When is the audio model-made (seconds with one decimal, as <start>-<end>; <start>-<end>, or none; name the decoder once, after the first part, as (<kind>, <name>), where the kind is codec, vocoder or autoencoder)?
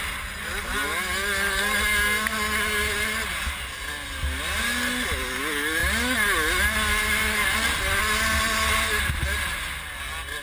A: none